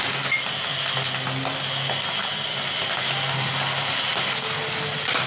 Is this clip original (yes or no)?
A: yes